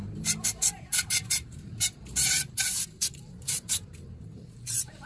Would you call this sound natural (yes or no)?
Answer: no